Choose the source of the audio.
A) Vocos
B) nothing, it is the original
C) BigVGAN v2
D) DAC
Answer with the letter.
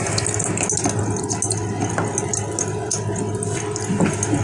B